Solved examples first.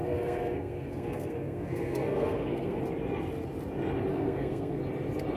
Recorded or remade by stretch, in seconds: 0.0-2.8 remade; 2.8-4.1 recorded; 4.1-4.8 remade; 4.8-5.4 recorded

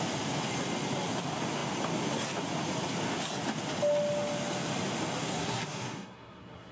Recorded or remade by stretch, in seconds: 0.0-5.2 recorded; 5.2-6.7 remade

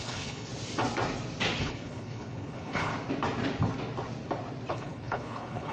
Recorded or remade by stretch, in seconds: 0.0-0.5 remade; 0.5-1.6 recorded; 1.6-2.9 remade; 2.9-4.7 recorded; 4.7-5.7 remade

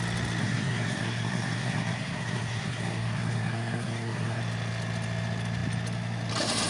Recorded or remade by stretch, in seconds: 0.0-0.4 recorded; 0.4-4.4 remade; 4.4-6.7 recorded

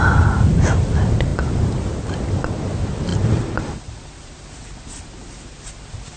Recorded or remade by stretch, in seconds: 0.0-6.2 recorded

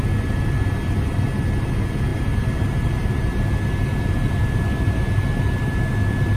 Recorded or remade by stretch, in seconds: 0.0-6.4 recorded